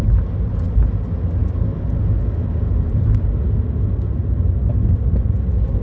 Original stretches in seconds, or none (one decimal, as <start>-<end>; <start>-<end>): 0.0-5.8